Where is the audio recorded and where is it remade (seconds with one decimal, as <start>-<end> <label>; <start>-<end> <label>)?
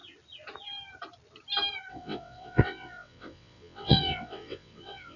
0.0-1.9 recorded; 1.9-5.2 remade